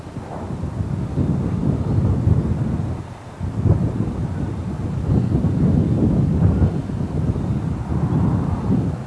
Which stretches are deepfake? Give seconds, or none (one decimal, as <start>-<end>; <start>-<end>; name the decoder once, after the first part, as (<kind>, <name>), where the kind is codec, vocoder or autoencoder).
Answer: none